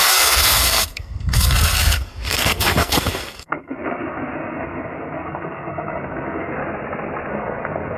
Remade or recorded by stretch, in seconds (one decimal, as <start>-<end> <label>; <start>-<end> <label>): 0.0-6.6 remade; 6.6-7.3 recorded; 7.3-8.0 remade